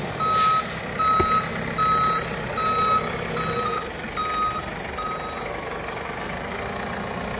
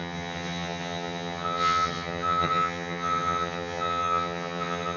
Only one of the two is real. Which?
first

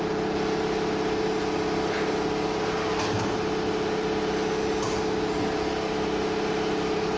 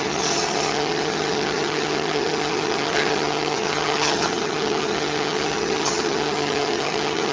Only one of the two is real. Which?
first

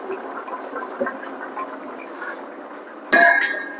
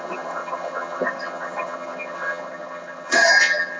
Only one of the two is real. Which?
first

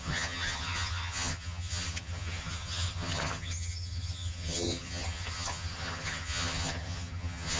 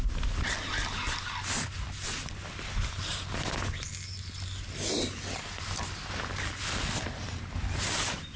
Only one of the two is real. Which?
second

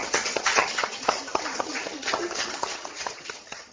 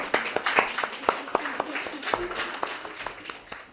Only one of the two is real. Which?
second